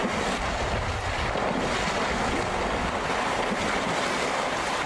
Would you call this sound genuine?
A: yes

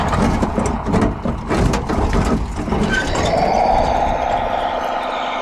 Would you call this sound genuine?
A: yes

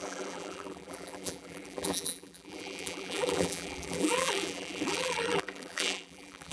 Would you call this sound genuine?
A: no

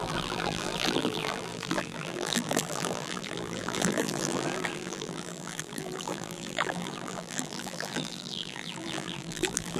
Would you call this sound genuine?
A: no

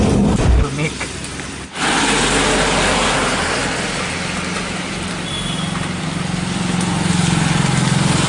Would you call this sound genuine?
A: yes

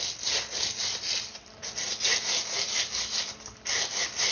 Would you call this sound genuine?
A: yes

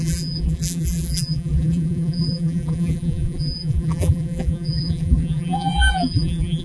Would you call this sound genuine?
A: no